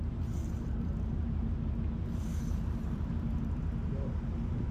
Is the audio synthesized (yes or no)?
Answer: yes